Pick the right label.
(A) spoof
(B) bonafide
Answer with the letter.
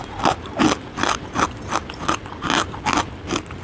B